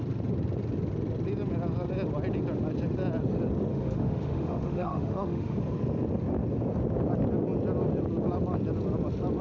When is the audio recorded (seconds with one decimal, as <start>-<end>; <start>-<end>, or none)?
0.0-3.7; 5.6-9.4